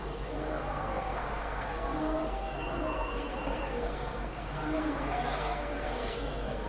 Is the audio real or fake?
fake